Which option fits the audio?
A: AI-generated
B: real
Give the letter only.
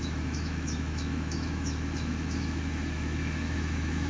A